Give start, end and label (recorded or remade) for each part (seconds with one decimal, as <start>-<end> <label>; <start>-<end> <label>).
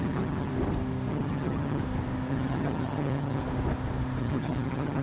0.0-0.5 remade; 0.5-1.1 recorded; 1.1-1.8 remade; 1.8-2.3 recorded; 2.3-3.4 remade; 3.4-4.2 recorded; 4.2-5.0 remade